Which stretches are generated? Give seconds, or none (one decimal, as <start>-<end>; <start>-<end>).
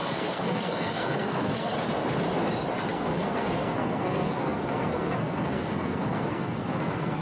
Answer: 0.0-1.7; 2.9-7.2